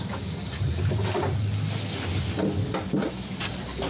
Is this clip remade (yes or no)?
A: no